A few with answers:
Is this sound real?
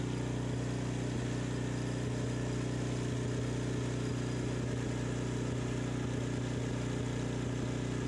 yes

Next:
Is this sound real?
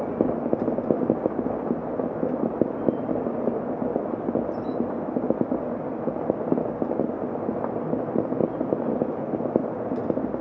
yes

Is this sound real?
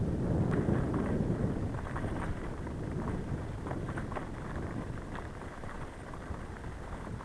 no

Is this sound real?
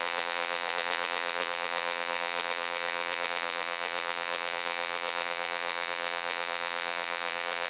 no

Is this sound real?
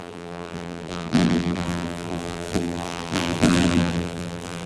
no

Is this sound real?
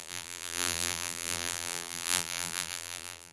no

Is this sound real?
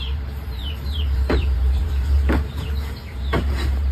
no